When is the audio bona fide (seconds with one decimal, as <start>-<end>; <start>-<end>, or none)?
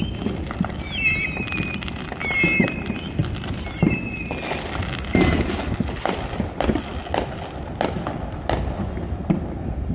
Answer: 0.0-9.9